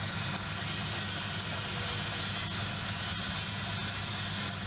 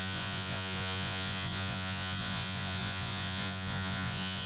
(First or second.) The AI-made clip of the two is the second